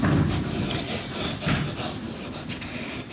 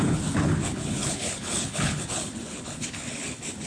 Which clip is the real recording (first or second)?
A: first